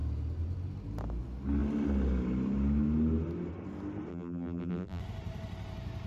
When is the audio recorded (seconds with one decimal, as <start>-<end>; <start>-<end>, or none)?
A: 0.0-4.1; 5.0-6.1